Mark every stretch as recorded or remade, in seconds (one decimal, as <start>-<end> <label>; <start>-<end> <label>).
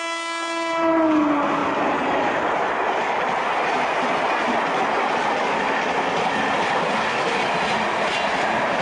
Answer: 0.0-8.8 recorded